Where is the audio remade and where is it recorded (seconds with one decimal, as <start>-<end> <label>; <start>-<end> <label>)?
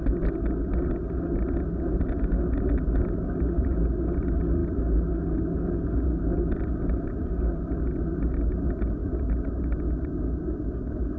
0.0-11.2 recorded